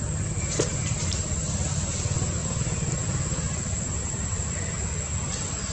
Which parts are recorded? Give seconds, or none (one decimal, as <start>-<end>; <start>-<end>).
0.0-0.7; 2.0-2.4; 4.5-5.7